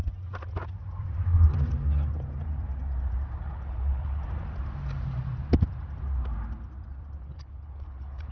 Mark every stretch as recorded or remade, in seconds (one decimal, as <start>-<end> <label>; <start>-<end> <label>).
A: 0.0-3.4 recorded; 3.4-4.2 remade; 4.2-7.2 recorded; 7.2-8.3 remade